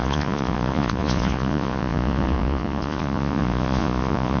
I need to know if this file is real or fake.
fake